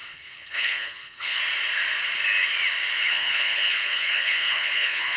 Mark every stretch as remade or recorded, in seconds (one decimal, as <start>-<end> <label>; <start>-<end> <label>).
0.0-1.4 remade; 1.4-3.0 recorded; 3.0-5.2 remade